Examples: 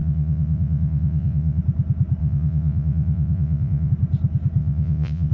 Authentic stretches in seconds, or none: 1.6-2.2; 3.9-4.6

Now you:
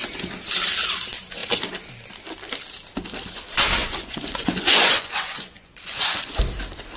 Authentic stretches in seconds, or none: 0.0-3.8; 6.3-7.0